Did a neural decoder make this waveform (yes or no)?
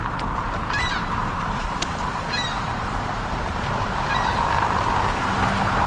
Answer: yes